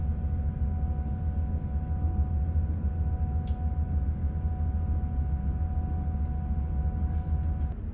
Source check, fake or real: real